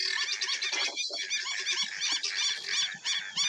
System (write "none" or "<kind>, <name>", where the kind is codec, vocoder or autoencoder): none